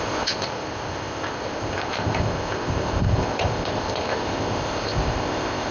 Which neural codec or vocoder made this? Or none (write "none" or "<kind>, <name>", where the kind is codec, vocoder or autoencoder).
codec, ZipCodec